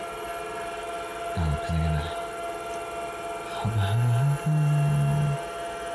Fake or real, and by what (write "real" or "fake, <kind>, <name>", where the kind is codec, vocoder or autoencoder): real